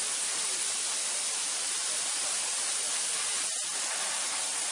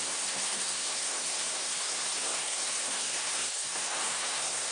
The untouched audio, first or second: first